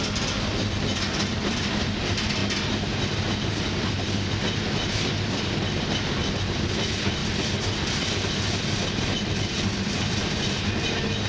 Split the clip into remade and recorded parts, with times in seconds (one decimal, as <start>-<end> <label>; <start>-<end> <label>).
0.0-1.3 recorded; 1.3-1.9 remade; 1.9-7.2 recorded; 7.2-10.1 remade; 10.1-11.3 recorded